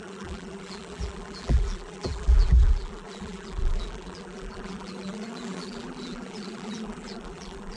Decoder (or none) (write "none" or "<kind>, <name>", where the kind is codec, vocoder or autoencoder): vocoder, BigVGAN v2